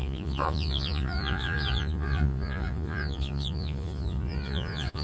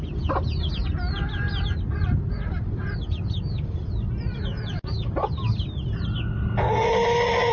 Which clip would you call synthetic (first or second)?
first